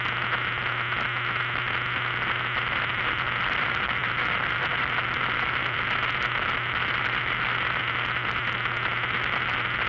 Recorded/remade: recorded